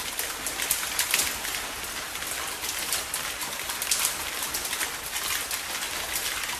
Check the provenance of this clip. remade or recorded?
recorded